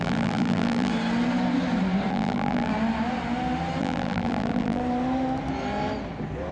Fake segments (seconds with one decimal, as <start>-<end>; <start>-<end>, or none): 0.0-0.9; 2.1-2.7; 3.8-4.8